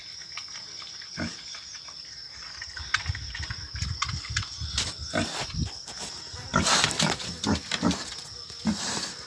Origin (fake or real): real